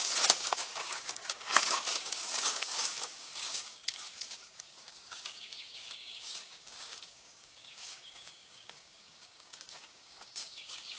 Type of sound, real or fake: fake